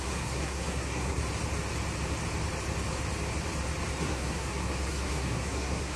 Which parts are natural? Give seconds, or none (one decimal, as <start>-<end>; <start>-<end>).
1.2-4.0